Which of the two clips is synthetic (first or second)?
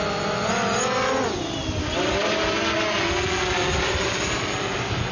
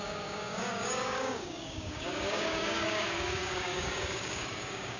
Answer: second